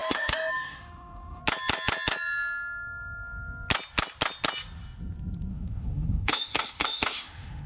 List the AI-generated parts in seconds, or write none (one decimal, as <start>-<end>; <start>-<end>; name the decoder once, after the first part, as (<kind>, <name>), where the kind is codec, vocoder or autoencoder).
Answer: 0.0-1.4 (autoencoder, DAC-VAE); 5.5-7.7